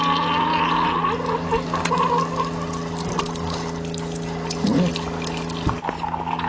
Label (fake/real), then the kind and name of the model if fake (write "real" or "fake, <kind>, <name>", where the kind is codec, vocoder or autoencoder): real